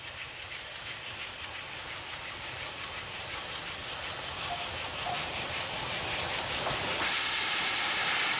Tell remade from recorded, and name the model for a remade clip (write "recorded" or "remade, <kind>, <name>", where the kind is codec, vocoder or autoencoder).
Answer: recorded